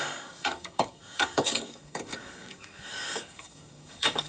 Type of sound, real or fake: fake